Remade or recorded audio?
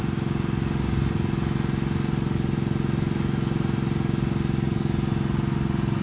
recorded